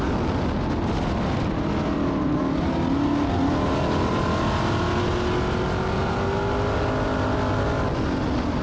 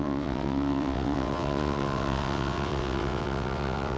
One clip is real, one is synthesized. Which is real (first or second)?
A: first